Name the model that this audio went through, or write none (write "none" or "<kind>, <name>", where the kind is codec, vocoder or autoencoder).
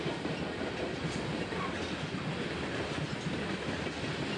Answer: none